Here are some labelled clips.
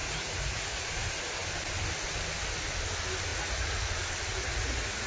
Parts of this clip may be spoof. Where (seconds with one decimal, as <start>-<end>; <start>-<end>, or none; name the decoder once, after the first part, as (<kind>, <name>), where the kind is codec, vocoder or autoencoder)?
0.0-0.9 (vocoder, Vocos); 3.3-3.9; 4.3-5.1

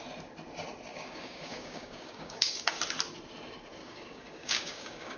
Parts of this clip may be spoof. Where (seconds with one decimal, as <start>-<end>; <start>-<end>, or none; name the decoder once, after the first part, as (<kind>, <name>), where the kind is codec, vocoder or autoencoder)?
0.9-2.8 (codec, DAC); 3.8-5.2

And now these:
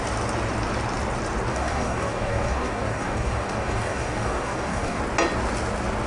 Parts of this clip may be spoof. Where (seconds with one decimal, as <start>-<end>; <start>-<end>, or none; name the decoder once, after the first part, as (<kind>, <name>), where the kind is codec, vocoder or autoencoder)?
1.5-5.0 (codec, DAC)